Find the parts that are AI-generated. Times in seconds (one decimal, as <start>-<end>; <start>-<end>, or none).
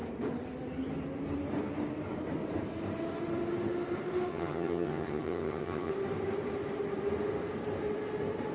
4.3-5.9